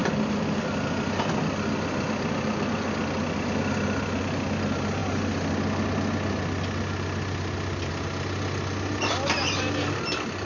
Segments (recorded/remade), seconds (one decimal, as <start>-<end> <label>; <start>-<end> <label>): 0.0-10.5 recorded